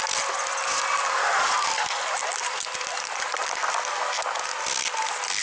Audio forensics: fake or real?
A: real